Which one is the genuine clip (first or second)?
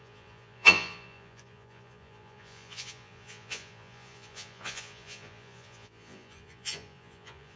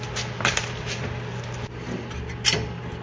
second